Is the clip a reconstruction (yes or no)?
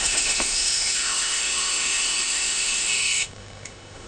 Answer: yes